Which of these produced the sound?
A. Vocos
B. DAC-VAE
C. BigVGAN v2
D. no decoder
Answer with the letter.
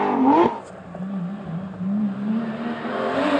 D